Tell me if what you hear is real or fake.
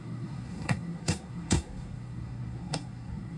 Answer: fake